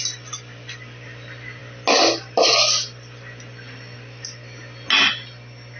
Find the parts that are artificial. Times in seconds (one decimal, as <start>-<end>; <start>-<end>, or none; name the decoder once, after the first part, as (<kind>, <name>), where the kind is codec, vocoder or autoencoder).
none